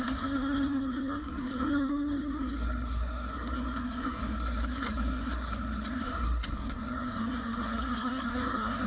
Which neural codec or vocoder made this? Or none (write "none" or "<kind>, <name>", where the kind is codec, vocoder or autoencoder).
codec, SNAC